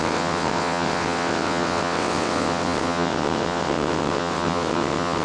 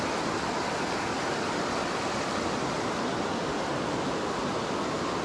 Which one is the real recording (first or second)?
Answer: second